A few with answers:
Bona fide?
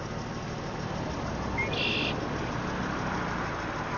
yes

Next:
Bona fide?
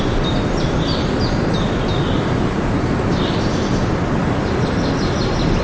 yes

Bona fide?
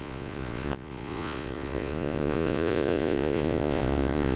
no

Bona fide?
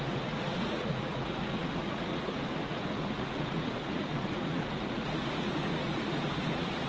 no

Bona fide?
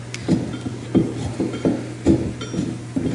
yes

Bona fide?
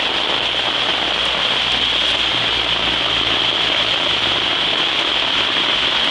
yes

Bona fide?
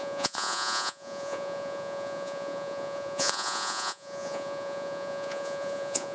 no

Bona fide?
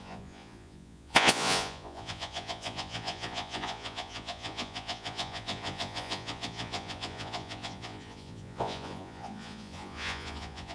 no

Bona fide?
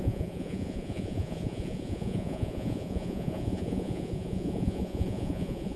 no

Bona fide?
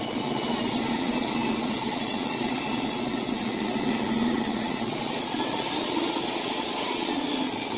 no